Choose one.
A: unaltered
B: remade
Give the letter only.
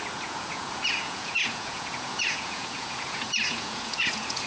B